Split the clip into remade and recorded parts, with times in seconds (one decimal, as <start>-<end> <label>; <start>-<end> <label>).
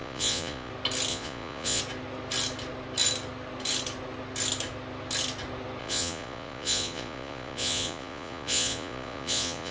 0.0-0.7 remade; 0.7-1.1 recorded; 1.1-1.8 remade; 1.8-5.8 recorded; 5.8-9.7 remade